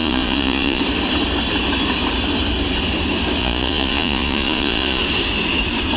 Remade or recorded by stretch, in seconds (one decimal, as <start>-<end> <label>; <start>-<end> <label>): 0.0-0.8 remade; 0.8-3.4 recorded; 3.4-5.0 remade; 5.0-6.0 recorded

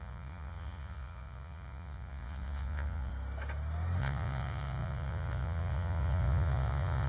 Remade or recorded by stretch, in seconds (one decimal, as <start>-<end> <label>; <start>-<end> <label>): 0.0-3.1 remade; 3.1-4.0 recorded; 4.0-7.1 remade

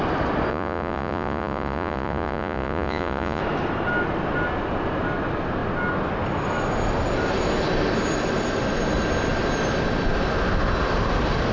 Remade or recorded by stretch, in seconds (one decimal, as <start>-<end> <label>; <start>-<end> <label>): 0.0-0.5 recorded; 0.5-3.4 remade; 3.4-11.5 recorded

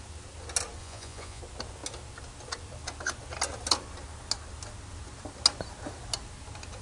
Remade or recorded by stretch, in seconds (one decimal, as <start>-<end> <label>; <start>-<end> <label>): 0.0-0.8 recorded; 0.8-1.4 remade; 1.4-6.8 recorded

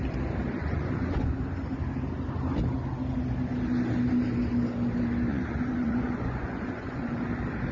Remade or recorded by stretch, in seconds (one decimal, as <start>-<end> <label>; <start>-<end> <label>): 0.0-0.6 recorded; 0.6-1.4 remade; 1.4-5.3 recorded; 5.3-7.2 remade; 7.2-7.7 recorded

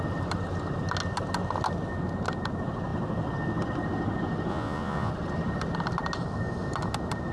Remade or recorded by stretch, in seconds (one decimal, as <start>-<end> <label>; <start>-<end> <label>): 0.0-4.5 recorded; 4.5-5.1 remade; 5.1-7.3 recorded

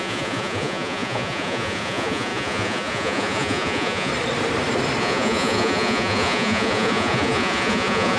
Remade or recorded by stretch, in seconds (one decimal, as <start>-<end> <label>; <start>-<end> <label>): 0.0-4.1 remade; 4.1-5.0 recorded; 5.0-8.2 remade

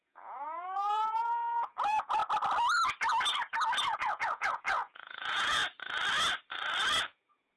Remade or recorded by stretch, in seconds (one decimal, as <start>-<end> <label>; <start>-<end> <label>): 0.0-2.2 remade; 2.2-3.8 recorded; 3.8-5.6 remade; 5.6-7.0 recorded; 7.0-7.6 remade